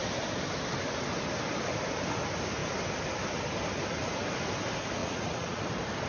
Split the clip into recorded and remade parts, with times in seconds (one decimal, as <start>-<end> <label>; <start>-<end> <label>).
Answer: 0.0-5.0 recorded; 5.0-5.6 remade; 5.6-6.1 recorded